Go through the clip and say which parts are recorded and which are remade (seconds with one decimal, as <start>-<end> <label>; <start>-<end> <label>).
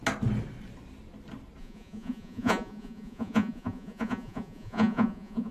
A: 0.0-1.6 recorded; 1.6-5.5 remade